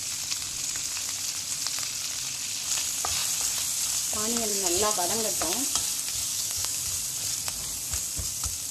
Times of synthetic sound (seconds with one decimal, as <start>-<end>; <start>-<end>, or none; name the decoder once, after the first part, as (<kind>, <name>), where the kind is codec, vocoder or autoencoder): 4.5-5.1 (codec, DAC); 6.3-6.8